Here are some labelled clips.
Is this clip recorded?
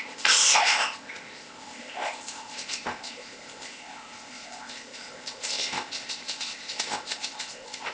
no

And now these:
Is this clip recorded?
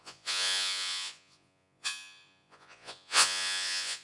no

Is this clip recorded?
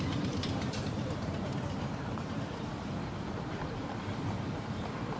no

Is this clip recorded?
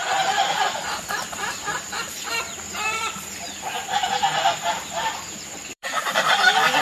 no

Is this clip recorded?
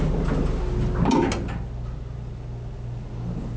yes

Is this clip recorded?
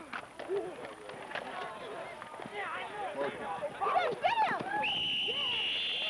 yes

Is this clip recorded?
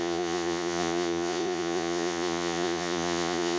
no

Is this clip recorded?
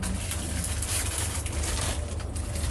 no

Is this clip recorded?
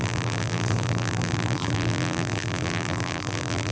no